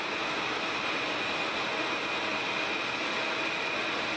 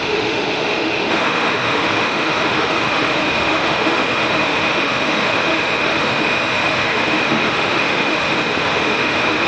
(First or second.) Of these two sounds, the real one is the first